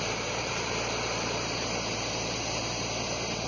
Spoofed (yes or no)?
yes